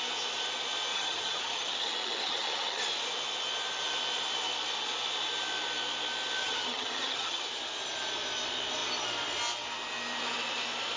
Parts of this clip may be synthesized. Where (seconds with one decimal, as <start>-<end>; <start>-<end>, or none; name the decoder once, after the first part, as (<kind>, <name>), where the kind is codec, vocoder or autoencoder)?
0.9-2.8 (vocoder, HiFi-GAN); 6.4-7.4